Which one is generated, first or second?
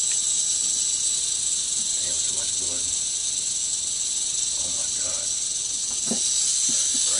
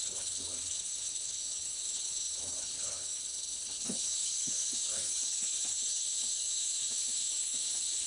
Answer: second